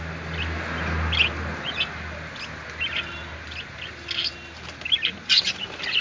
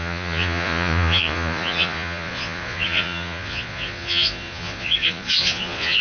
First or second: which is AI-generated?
second